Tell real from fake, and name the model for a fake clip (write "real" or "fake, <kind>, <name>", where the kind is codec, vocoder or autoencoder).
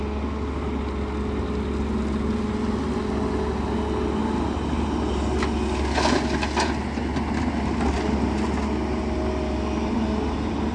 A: real